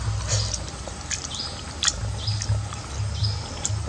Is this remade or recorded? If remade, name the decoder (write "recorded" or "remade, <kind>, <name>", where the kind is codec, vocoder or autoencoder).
recorded